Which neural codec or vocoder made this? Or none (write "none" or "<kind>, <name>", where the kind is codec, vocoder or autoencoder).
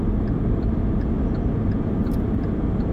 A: none